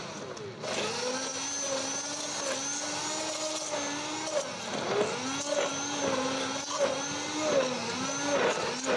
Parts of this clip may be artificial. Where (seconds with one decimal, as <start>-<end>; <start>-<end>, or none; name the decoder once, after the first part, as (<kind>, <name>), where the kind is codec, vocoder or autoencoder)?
none